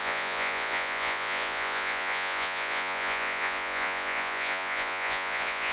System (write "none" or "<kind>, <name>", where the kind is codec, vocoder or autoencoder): vocoder, Vocos